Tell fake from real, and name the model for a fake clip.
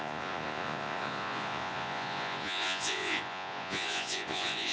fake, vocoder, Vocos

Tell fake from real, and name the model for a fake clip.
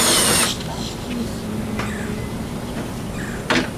real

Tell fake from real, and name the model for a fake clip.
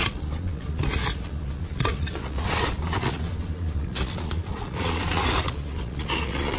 fake, vocoder, Vocos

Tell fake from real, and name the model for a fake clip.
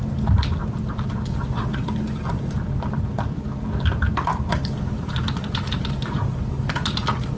real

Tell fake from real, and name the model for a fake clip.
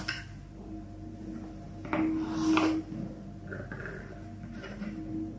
real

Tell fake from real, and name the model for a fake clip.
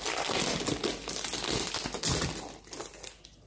real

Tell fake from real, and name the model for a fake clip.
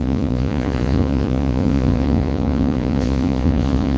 fake, vocoder, Vocos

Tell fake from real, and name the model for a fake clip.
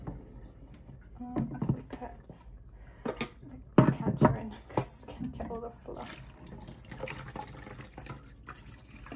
real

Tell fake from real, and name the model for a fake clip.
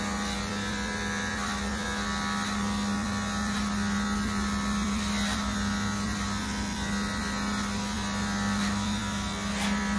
real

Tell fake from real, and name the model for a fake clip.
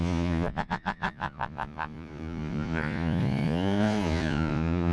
fake, vocoder, Vocos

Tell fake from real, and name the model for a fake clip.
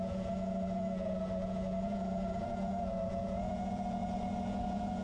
fake, vocoder, Vocos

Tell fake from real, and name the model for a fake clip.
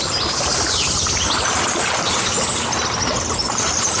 real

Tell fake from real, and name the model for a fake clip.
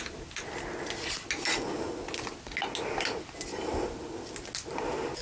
real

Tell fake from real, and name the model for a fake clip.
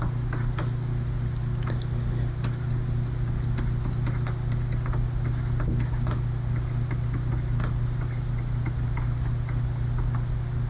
real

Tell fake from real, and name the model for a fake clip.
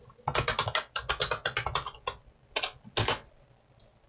real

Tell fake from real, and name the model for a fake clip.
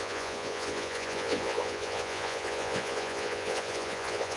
fake, vocoder, Vocos